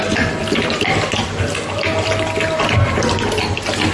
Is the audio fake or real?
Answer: real